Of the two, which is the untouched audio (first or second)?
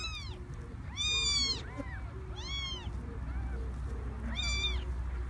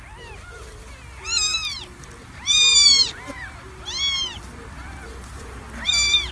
first